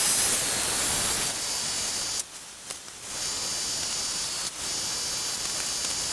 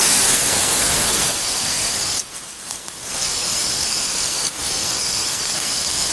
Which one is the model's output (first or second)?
second